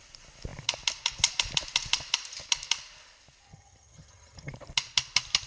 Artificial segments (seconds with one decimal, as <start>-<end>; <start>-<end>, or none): 3.5-4.5